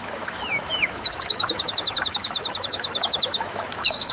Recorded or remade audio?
remade